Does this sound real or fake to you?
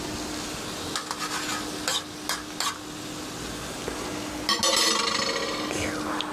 real